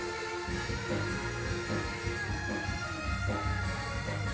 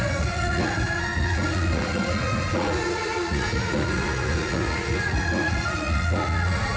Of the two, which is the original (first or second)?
first